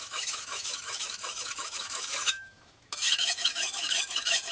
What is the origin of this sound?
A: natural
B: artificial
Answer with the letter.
B